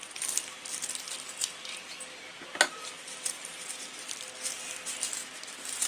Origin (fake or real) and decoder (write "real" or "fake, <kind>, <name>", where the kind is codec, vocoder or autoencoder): real